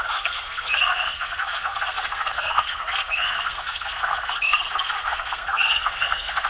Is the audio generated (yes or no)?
yes